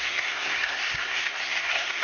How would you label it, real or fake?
fake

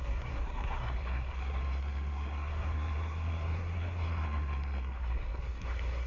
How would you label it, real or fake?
fake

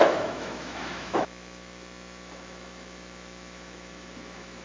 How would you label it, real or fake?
fake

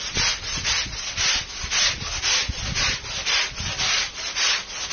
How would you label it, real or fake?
real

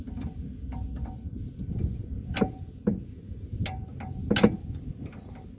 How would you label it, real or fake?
real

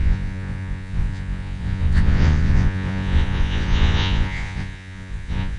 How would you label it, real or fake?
fake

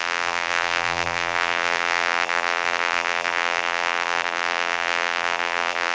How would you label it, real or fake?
fake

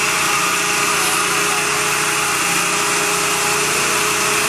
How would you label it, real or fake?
real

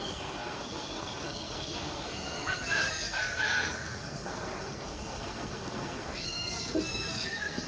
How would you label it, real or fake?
fake